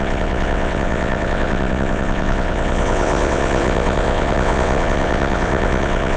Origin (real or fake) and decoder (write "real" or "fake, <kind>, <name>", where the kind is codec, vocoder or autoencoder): fake, vocoder, WaveNeXt